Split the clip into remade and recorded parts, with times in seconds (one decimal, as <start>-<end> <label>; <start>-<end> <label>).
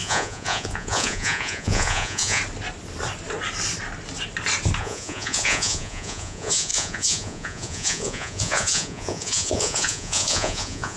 0.0-2.4 remade; 2.4-4.8 recorded; 4.8-11.0 remade